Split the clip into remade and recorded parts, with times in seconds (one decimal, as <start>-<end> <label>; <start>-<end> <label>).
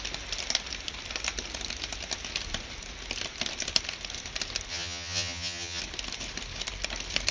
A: 0.0-4.7 recorded; 4.7-5.8 remade; 5.8-7.3 recorded